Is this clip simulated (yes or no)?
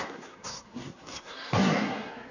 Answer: yes